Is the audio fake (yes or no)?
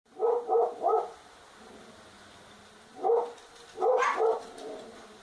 no